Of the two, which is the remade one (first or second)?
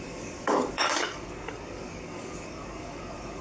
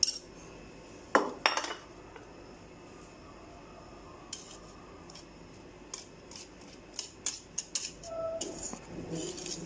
first